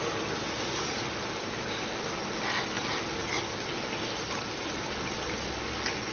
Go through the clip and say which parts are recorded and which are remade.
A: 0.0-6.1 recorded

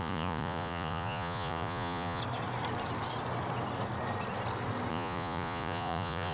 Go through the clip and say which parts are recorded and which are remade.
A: 0.0-2.2 remade; 2.2-4.9 recorded; 4.9-6.3 remade

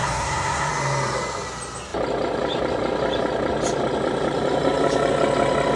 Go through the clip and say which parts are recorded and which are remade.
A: 0.0-0.7 remade; 0.7-5.8 recorded

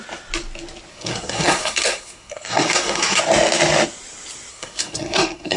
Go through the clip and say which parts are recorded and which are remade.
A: 0.0-0.9 recorded; 0.9-3.2 remade; 3.2-4.5 recorded; 4.5-5.6 remade

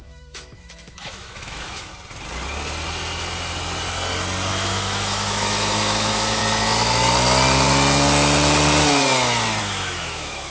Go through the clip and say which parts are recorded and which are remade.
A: 0.0-1.9 remade; 1.9-4.5 recorded; 4.5-6.4 remade; 6.4-9.6 recorded; 9.6-10.5 remade

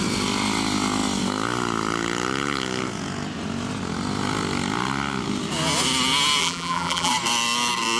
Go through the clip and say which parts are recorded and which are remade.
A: 0.0-6.4 recorded; 6.4-7.1 remade; 7.1-8.0 recorded

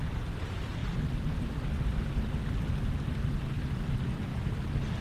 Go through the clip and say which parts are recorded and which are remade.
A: 0.0-5.0 recorded

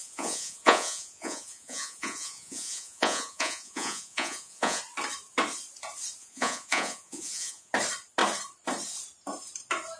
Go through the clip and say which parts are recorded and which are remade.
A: 0.0-4.8 remade; 4.8-6.2 recorded; 6.2-7.7 remade; 7.7-10.0 recorded